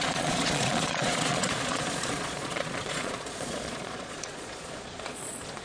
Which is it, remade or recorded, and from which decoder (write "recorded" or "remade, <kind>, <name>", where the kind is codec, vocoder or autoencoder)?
remade, vocoder, Vocos